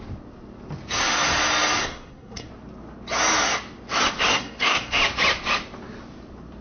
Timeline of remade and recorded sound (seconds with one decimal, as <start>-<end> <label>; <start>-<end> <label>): 0.0-1.8 recorded; 1.8-2.5 remade; 2.5-4.3 recorded; 4.3-5.0 remade; 5.0-6.6 recorded